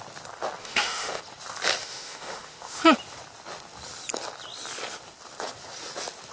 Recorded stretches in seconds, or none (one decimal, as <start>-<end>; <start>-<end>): 0.0-0.6; 1.2-1.8; 2.8-6.3